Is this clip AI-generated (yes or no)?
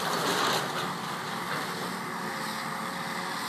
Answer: no